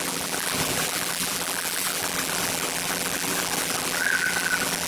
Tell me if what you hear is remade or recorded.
remade